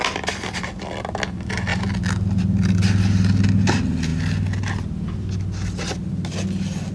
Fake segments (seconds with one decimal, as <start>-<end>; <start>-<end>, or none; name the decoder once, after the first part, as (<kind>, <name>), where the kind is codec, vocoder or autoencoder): none